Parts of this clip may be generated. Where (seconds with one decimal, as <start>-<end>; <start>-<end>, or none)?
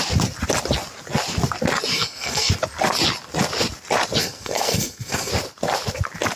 1.9-2.5; 4.2-5.3